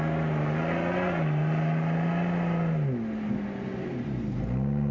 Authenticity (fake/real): real